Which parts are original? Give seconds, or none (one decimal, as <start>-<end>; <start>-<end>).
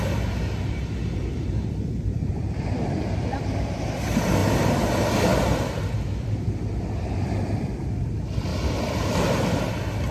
0.0-1.3; 2.4-10.1